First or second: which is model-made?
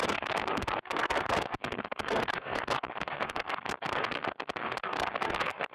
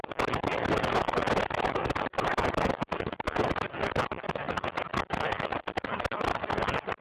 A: first